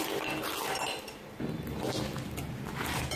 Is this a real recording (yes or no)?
yes